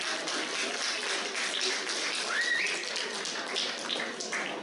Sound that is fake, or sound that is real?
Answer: real